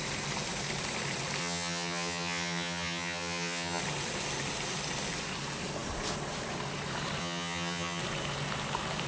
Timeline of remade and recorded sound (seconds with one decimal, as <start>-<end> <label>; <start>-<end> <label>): 0.0-1.4 recorded; 1.4-3.8 remade; 3.8-7.2 recorded; 7.2-8.0 remade; 8.0-9.1 recorded